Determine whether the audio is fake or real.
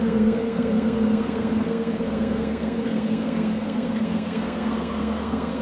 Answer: fake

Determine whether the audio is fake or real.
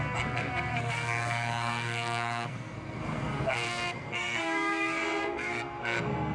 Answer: fake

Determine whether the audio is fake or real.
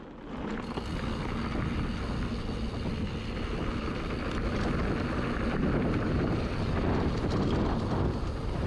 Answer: real